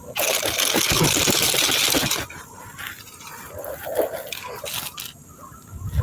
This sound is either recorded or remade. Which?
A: recorded